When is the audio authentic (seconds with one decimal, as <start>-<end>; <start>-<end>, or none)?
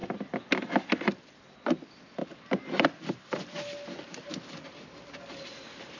0.0-6.0